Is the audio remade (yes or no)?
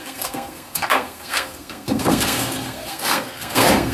yes